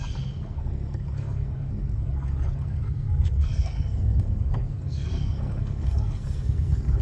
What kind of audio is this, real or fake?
fake